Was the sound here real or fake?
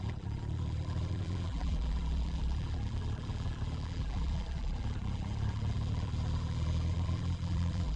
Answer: fake